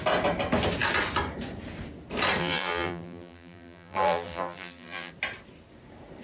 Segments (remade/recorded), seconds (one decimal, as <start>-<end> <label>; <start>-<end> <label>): 0.0-2.4 recorded; 2.4-5.1 remade; 5.1-6.2 recorded

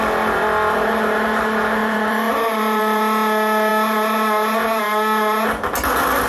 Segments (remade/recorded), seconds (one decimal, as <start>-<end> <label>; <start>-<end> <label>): 0.0-1.8 recorded; 1.8-3.0 remade; 3.0-6.3 recorded

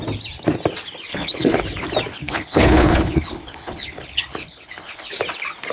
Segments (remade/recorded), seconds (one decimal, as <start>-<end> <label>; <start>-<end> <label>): 0.0-1.1 recorded; 1.1-1.6 remade; 1.6-2.1 recorded; 2.1-5.1 remade; 5.1-5.7 recorded

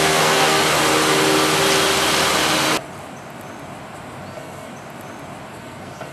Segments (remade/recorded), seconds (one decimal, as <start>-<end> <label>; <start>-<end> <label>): 0.0-0.6 remade; 0.6-4.3 recorded; 4.3-4.7 remade; 4.7-5.5 recorded; 5.5-6.1 remade